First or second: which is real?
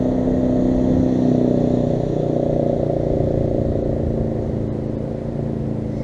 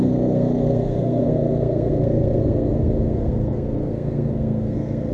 first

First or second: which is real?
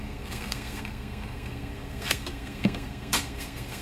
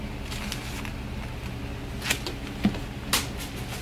second